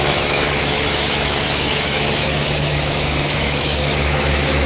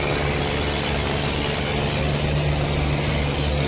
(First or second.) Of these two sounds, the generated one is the first